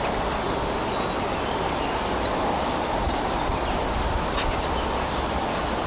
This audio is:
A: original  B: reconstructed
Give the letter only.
A